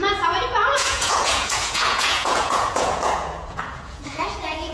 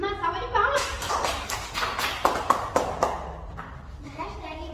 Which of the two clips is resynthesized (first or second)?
first